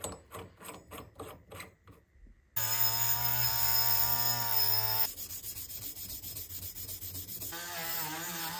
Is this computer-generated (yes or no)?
no